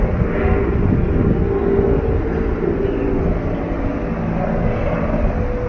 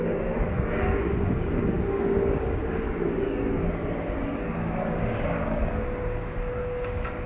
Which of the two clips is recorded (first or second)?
first